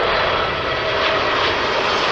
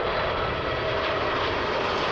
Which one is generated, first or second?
second